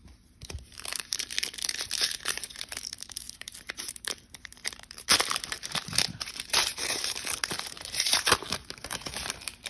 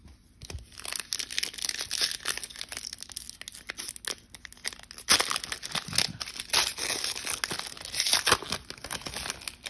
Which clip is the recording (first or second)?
second